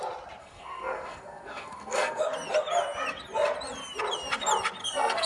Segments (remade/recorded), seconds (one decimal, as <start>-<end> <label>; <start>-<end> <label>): 0.0-0.4 recorded; 0.4-2.2 remade; 2.2-4.8 recorded; 4.8-5.3 remade